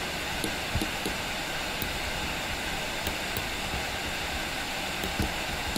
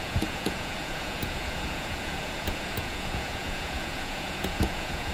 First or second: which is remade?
second